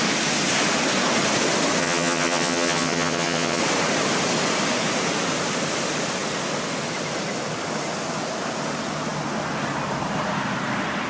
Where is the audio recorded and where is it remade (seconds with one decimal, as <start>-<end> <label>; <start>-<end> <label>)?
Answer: 0.0-1.8 recorded; 1.8-3.6 remade; 3.6-11.1 recorded